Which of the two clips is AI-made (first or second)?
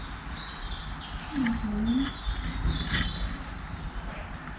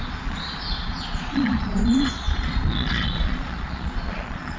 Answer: second